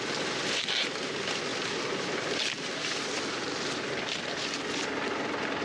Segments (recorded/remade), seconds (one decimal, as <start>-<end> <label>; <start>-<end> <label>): 0.0-5.6 recorded